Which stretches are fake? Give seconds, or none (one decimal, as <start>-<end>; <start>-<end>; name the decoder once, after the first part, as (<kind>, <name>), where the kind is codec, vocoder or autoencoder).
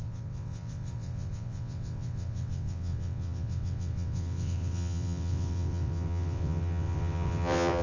0.0-7.8 (vocoder, WaveNeXt)